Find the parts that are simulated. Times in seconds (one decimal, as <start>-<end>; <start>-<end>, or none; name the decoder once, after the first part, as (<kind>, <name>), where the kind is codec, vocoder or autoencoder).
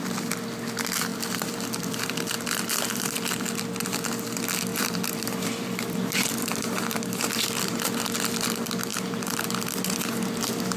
1.1-3.4 (vocoder, BigVGAN v2); 4.7-7.4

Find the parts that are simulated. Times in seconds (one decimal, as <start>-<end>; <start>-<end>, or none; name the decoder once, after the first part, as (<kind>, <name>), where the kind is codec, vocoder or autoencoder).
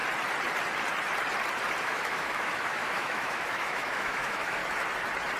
1.8-4.6 (autoencoder, DAC-VAE)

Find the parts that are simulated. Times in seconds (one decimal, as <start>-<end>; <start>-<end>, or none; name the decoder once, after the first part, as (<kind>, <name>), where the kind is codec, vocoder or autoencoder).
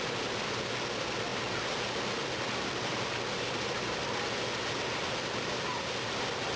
none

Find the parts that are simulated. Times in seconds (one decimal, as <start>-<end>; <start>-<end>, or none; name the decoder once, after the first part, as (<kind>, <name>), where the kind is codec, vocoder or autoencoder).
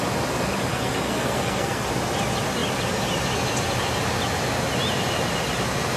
0.7-1.9 (codec, SNAC)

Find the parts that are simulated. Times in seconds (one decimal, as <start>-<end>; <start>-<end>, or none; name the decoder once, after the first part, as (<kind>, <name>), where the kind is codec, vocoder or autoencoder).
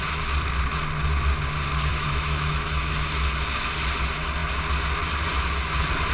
1.9-2.9 (autoencoder, DAC-VAE)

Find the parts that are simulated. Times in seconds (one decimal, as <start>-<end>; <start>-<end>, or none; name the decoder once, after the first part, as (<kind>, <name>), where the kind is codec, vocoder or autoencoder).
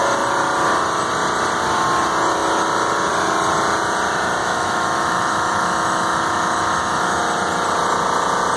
4.4-7.2 (autoencoder, DAC-VAE)